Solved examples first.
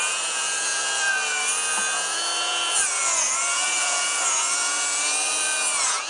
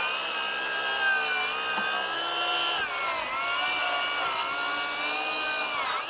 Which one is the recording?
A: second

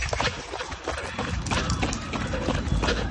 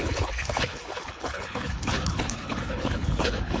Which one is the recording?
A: first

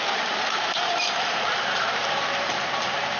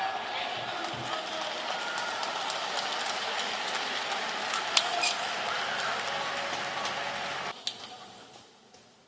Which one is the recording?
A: second